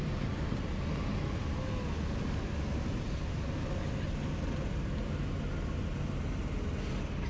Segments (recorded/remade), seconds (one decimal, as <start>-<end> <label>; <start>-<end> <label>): 0.0-7.3 recorded